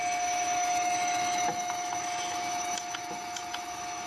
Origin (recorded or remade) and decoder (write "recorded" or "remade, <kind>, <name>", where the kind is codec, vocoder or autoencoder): remade, autoencoder, DAC-VAE